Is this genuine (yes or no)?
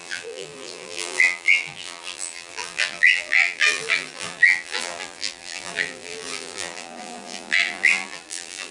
no